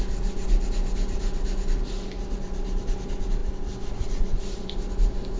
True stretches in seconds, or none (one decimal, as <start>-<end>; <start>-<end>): 0.0-3.4; 4.4-5.4

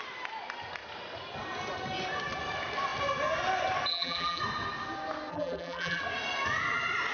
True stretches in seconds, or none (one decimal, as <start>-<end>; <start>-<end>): 0.0-3.9; 4.4-5.3; 6.0-7.1

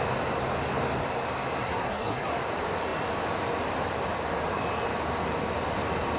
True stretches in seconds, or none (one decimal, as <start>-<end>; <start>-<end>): 0.0-1.6; 2.3-6.2

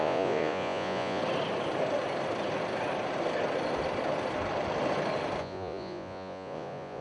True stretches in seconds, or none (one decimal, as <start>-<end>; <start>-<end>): 1.2-5.4

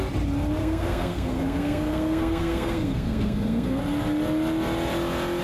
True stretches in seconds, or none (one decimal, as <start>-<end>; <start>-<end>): 0.0-0.6; 3.8-5.4

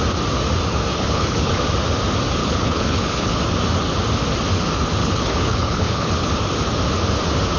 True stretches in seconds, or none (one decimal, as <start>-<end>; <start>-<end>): 0.0-0.9; 1.6-2.4; 3.3-5.0; 6.3-7.6

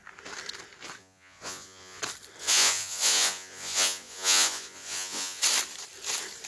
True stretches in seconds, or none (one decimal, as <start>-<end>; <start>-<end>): 0.0-1.0; 2.0-2.4; 5.4-6.5

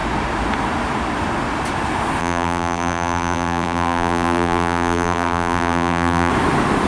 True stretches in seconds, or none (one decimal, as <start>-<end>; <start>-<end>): 0.0-2.2; 6.3-6.9